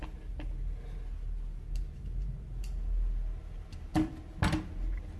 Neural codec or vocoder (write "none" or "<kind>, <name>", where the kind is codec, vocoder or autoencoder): none